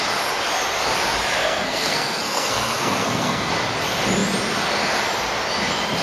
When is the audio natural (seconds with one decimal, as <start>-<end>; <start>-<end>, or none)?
0.0-1.4; 3.5-6.0